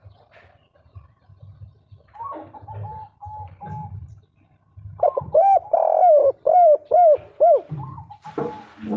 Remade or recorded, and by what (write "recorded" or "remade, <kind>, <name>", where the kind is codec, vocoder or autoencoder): recorded